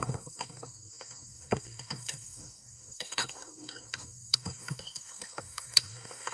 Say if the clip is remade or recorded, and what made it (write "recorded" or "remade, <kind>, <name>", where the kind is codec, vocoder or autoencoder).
remade, codec, SNAC